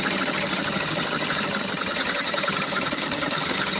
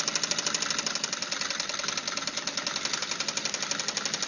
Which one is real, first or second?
second